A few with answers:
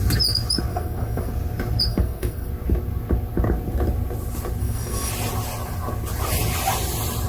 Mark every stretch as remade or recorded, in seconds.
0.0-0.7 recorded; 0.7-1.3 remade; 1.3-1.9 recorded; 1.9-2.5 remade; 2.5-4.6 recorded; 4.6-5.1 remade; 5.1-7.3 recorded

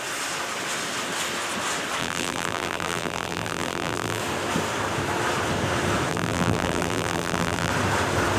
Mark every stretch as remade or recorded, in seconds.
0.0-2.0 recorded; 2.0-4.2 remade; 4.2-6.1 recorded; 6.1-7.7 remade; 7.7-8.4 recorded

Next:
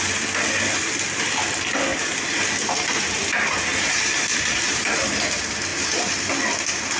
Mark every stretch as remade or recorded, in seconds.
0.0-1.9 recorded; 1.9-2.5 remade; 2.5-3.7 recorded; 3.7-4.8 remade; 4.8-7.0 recorded

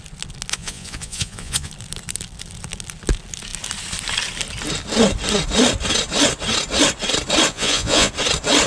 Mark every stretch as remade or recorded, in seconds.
0.0-0.5 recorded; 0.5-1.7 remade; 1.7-7.5 recorded; 7.5-8.1 remade; 8.1-8.7 recorded